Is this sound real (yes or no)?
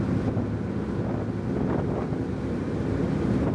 yes